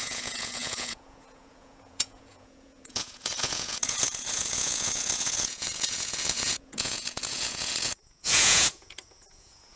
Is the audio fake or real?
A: fake